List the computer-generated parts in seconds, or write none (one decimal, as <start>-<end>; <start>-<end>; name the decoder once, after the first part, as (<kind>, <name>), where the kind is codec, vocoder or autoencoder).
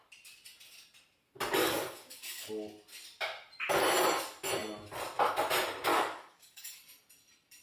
1.6-2.5 (codec, DAC); 5.9-6.8